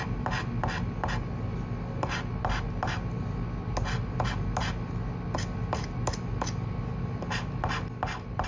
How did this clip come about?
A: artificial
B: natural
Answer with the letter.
B